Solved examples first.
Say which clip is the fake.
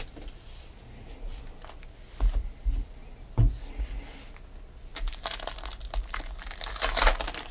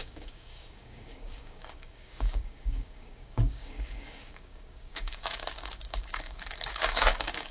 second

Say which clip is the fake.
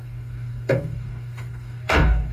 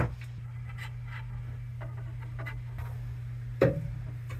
first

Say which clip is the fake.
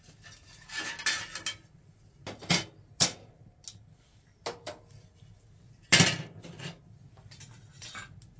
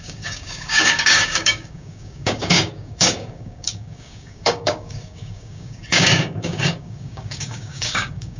second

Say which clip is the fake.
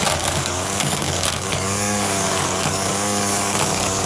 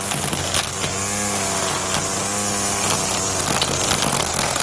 first